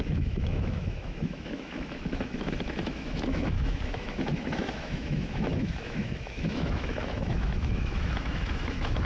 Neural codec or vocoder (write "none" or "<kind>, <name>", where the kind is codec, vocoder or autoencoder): autoencoder, DAC-VAE